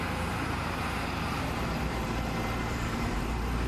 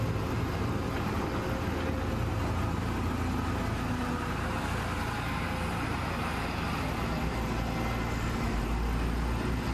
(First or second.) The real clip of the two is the second